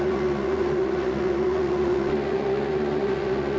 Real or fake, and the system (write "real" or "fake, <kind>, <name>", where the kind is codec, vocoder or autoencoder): fake, vocoder, Vocos